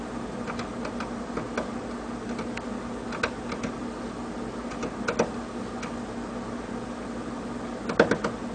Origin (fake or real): real